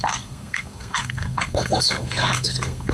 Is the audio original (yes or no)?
no